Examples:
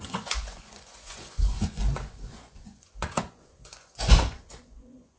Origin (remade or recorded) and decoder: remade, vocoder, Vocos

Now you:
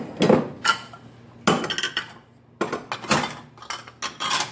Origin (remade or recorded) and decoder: recorded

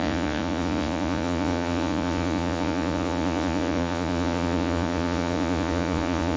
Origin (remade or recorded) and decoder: remade, vocoder, Vocos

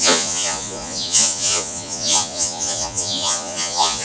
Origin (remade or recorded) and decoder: remade, vocoder, Vocos